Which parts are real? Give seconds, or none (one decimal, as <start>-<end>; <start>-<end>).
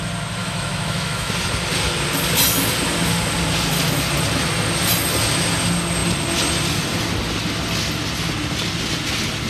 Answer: 0.0-0.4; 1.3-9.5